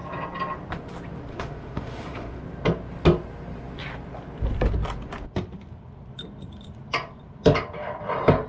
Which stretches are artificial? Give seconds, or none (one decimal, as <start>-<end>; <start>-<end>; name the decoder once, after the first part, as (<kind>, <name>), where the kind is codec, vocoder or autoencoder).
1.3-2.4 (autoencoder, DAC-VAE)